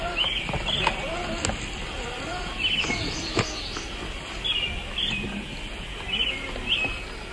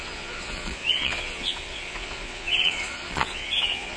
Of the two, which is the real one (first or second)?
first